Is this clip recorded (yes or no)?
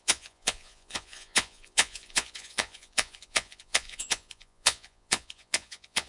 no